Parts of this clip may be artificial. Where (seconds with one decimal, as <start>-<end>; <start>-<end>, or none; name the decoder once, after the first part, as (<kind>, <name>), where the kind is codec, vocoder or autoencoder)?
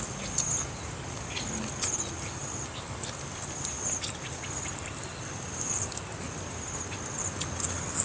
none